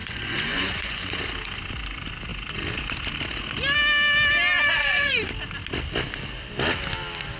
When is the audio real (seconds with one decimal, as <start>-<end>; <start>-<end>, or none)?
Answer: 1.2-4.7; 5.3-7.4